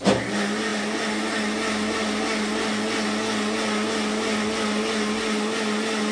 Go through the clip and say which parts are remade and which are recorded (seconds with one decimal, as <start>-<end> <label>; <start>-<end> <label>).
0.0-6.1 recorded